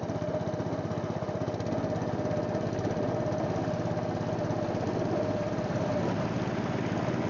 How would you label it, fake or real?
real